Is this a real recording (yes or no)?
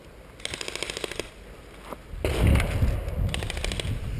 yes